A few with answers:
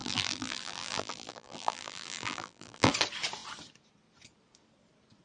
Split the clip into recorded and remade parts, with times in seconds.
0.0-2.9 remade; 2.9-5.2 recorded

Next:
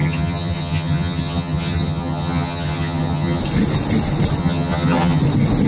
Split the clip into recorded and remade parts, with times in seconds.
0.0-3.4 remade; 3.4-4.4 recorded; 4.4-5.2 remade; 5.2-5.7 recorded

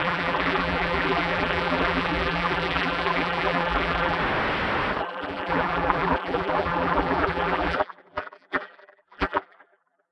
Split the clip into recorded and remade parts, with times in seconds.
0.0-4.2 remade; 4.2-5.0 recorded; 5.0-10.1 remade

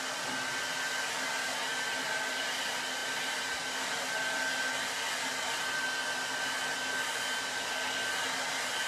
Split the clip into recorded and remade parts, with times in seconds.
0.0-8.9 recorded

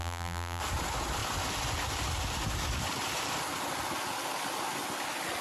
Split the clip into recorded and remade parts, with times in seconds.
0.0-0.6 remade; 0.6-5.4 recorded

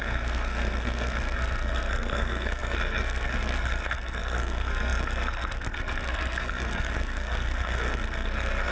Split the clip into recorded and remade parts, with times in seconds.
0.0-8.7 remade

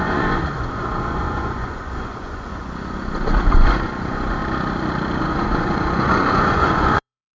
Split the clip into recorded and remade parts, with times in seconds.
0.0-4.4 remade; 4.4-5.2 recorded; 5.2-7.3 remade